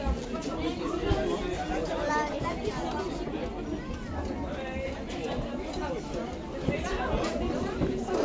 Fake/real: real